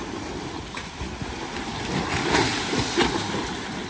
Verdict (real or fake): real